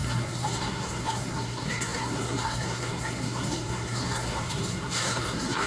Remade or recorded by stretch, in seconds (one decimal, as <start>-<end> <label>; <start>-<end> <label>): 0.0-5.7 remade